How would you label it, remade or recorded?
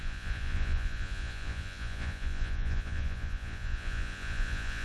remade